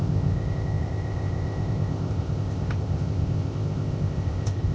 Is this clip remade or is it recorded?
remade